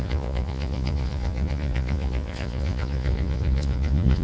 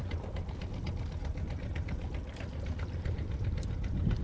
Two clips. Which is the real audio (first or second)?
second